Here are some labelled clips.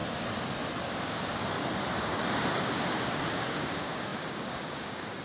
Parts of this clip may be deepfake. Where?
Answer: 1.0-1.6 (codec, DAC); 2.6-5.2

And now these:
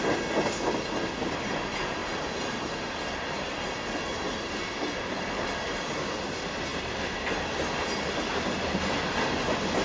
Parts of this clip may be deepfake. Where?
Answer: 2.0-2.9 (vocoder, BigVGAN v2); 4.1-4.7